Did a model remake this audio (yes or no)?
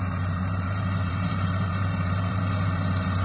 yes